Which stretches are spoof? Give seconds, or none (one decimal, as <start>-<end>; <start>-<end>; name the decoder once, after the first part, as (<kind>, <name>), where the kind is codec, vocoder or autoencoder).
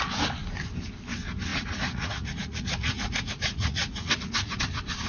1.5-4.6 (vocoder, Vocos)